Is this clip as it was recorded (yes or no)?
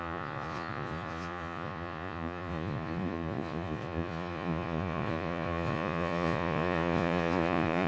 no